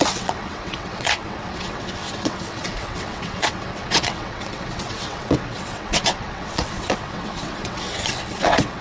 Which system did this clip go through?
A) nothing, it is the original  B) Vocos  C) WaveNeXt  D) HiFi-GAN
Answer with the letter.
C